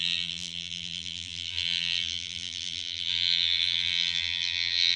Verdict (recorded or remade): remade